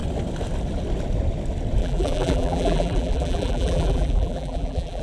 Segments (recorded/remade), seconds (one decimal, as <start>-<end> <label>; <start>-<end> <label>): 0.0-1.8 recorded; 1.8-5.0 remade